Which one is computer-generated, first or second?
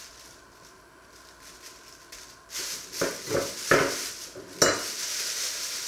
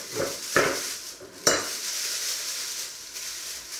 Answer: second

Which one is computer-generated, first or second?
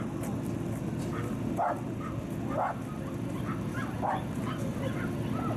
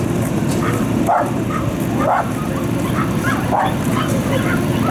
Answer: second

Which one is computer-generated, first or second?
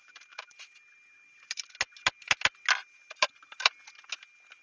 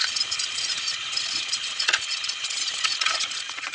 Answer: second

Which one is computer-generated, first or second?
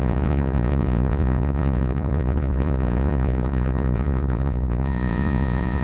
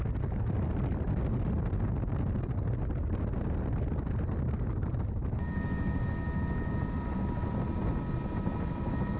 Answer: first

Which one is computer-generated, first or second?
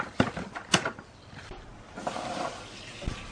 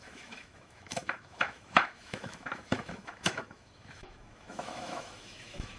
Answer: second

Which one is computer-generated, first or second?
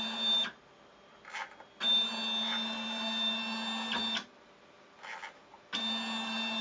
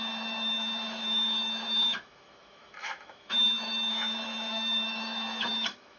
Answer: second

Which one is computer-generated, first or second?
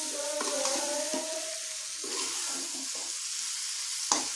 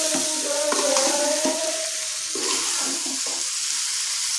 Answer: second